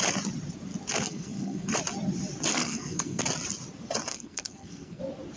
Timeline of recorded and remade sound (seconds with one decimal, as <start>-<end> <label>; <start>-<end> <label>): 0.0-1.1 recorded; 1.1-1.7 remade; 1.7-2.5 recorded; 2.5-3.2 remade; 3.2-4.1 recorded; 4.1-5.0 remade; 5.0-5.4 recorded